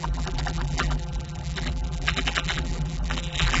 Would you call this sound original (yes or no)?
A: no